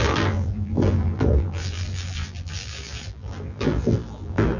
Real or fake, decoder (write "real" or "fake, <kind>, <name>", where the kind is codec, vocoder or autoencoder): fake, vocoder, BigVGAN v2